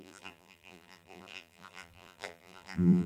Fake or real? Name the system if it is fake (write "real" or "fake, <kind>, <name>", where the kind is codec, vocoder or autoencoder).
fake, vocoder, BigVGAN v2